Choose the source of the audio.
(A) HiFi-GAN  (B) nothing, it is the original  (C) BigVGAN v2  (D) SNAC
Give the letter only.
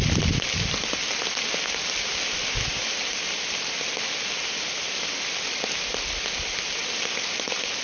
B